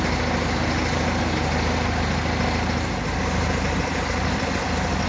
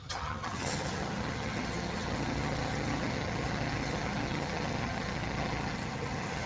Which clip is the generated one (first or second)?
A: second